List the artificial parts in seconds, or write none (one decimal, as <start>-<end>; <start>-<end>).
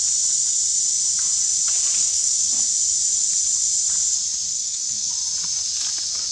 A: 2.0-2.5; 4.5-5.1